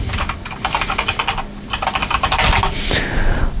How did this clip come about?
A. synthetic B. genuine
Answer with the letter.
B